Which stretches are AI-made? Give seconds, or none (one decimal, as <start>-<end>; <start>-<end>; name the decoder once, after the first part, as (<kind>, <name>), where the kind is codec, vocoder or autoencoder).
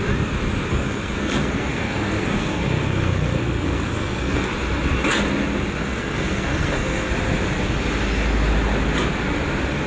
0.7-4.5 (codec, SNAC); 5.8-7.1